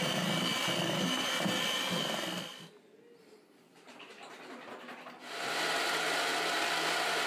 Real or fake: real